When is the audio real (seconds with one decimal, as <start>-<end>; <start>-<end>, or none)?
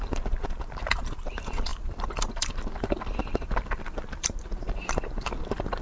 0.0-5.8